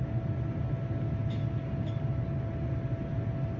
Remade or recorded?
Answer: recorded